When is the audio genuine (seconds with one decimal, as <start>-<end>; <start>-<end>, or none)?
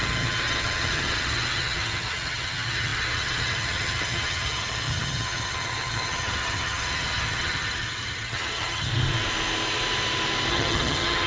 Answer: 8.9-10.5